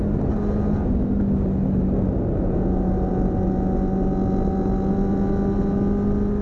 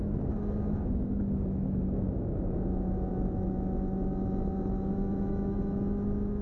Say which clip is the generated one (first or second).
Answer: second